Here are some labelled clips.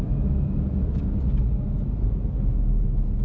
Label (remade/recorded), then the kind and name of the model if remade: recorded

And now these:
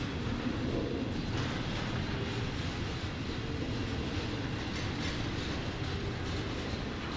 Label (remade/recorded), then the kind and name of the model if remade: recorded